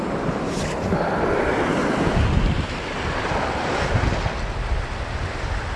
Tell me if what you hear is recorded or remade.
recorded